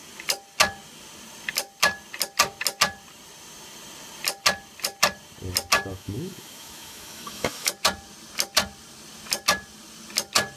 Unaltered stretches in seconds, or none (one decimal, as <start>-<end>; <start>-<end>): 0.0-5.9; 7.7-10.6